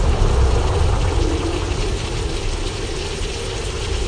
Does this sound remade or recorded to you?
recorded